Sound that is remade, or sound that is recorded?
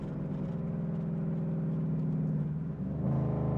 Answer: recorded